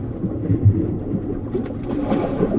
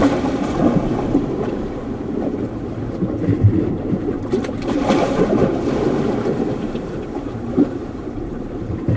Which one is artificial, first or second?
second